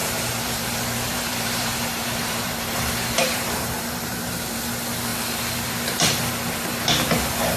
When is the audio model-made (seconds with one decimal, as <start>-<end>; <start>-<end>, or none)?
0.0-4.6

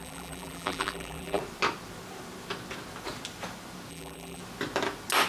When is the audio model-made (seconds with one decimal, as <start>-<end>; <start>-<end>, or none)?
0.0-1.4; 3.9-4.4

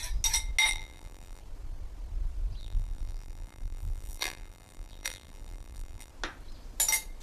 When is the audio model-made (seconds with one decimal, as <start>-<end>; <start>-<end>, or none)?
0.7-1.4; 2.6-6.1

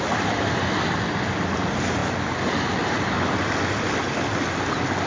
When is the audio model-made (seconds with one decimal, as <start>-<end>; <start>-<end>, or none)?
none